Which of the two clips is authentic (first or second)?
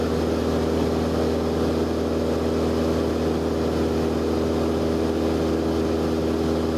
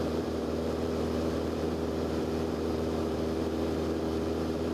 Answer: first